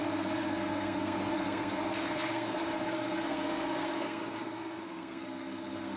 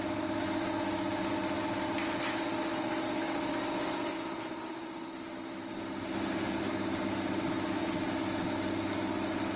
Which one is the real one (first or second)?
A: second